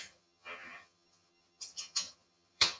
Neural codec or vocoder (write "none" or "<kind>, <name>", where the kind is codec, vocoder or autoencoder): vocoder, HiFi-GAN